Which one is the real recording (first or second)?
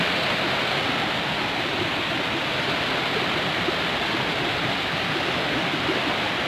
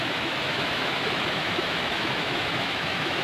first